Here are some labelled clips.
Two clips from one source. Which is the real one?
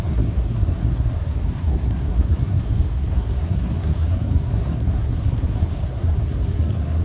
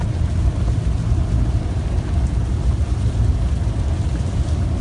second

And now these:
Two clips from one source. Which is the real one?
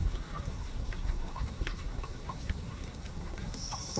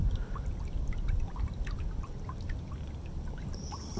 second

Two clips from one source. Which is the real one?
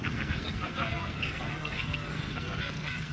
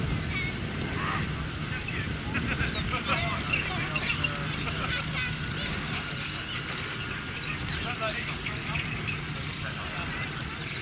second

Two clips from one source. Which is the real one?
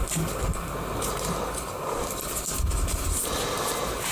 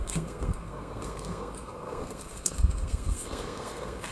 first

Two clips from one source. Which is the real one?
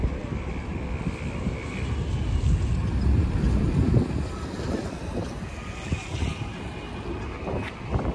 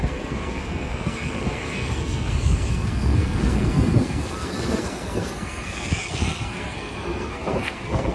first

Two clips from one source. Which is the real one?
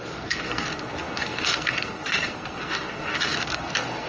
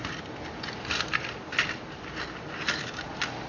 second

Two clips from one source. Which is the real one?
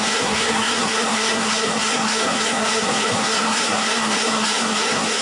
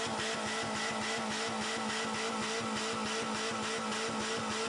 second